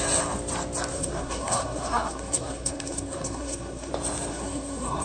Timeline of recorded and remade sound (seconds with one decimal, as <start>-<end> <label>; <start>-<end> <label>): 0.0-0.9 recorded; 0.9-3.9 remade; 3.9-4.3 recorded; 4.3-5.0 remade